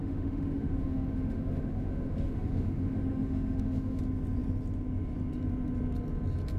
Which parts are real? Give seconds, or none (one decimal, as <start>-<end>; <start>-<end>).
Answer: 4.0-6.6